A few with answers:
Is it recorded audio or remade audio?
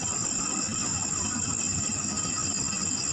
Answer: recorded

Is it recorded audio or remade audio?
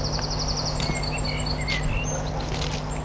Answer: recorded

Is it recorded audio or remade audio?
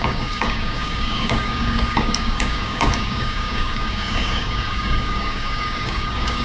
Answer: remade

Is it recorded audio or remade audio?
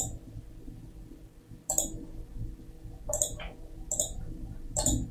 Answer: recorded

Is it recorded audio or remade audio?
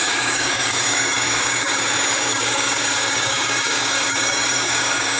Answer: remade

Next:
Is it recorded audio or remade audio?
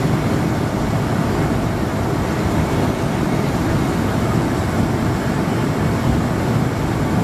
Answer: recorded